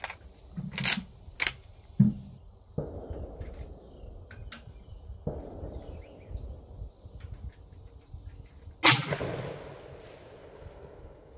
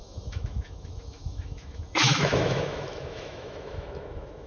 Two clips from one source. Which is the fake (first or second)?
second